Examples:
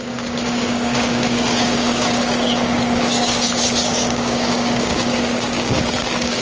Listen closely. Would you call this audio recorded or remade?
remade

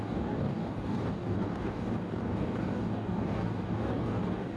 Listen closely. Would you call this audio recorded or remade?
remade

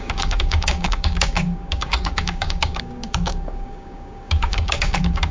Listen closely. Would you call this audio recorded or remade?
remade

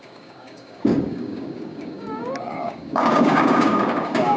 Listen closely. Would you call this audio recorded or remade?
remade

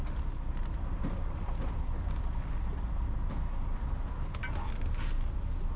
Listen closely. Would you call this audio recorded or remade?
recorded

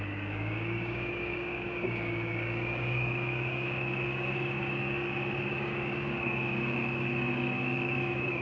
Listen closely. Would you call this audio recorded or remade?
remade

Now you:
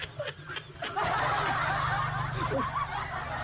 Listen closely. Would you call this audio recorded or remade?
recorded